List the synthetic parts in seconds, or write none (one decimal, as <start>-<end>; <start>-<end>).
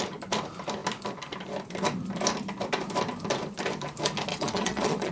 4.3-5.1